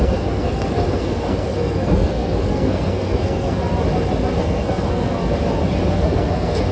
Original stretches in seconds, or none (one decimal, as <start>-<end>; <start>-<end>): 3.7-4.4; 5.2-5.9